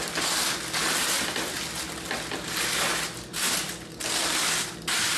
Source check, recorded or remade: recorded